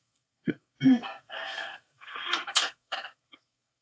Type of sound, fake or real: fake